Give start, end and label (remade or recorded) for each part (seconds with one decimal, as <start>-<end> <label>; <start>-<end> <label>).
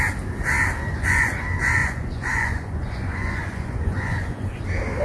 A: 0.0-0.9 recorded; 0.9-1.4 remade; 1.4-1.8 recorded; 1.8-4.6 remade; 4.6-5.0 recorded